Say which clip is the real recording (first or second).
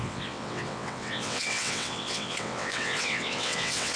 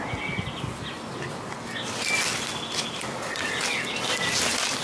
second